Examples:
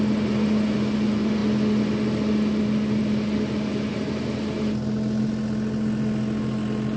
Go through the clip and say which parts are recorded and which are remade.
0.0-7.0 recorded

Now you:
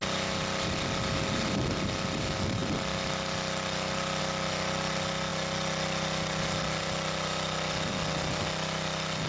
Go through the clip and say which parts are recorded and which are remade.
0.0-9.3 recorded

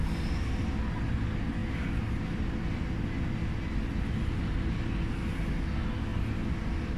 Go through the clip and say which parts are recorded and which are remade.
0.0-7.0 recorded